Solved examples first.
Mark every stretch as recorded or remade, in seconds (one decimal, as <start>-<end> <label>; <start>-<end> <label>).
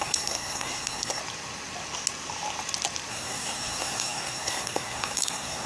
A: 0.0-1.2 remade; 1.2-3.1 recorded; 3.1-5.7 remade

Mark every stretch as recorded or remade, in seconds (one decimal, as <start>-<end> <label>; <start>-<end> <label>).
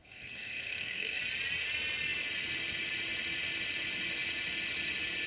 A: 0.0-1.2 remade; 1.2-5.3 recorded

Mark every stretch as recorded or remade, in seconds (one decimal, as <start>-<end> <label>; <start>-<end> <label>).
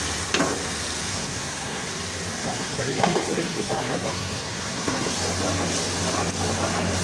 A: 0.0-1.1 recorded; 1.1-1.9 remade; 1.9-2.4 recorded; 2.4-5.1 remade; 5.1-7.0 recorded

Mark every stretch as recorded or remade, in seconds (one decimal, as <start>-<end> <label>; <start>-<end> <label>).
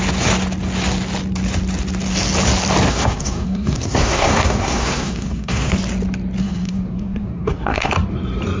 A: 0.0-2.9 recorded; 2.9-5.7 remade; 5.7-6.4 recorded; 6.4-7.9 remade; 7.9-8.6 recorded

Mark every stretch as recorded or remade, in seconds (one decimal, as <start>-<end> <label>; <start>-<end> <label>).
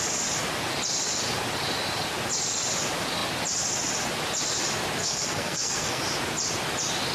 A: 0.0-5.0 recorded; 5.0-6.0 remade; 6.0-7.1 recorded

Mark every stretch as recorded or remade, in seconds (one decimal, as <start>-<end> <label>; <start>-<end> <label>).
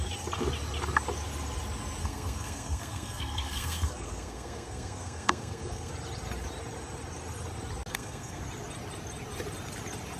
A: 0.0-2.0 recorded; 2.0-5.9 remade; 5.9-7.9 recorded; 7.9-8.4 remade; 8.4-10.2 recorded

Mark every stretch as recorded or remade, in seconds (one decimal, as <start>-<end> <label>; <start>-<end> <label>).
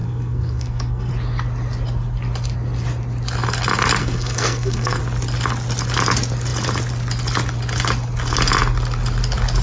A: 0.0-1.1 remade; 1.1-4.0 recorded; 4.0-5.0 remade; 5.0-9.6 recorded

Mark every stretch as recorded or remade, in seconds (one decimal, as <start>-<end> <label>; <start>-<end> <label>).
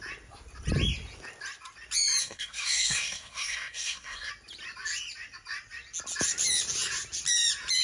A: 0.0-2.2 recorded; 2.2-4.3 remade; 4.3-7.8 recorded